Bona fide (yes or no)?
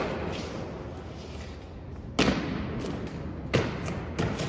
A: yes